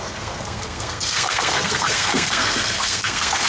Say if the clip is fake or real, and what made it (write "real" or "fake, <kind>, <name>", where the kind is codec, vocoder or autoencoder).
fake, codec, SNAC